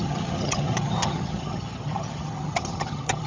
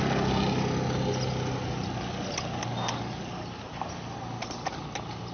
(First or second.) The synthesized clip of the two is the first